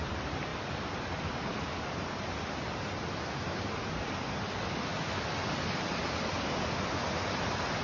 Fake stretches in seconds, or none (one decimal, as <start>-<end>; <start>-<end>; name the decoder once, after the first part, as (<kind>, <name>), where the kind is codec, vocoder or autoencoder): none